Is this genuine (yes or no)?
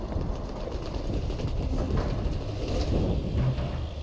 yes